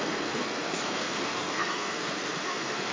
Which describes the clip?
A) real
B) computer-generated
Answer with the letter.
B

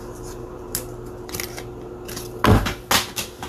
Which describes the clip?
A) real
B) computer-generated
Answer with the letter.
A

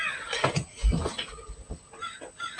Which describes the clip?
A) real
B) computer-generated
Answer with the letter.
A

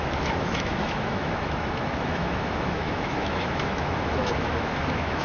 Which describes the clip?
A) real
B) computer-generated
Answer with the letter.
B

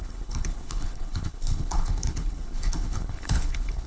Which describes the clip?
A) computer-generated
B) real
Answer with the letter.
A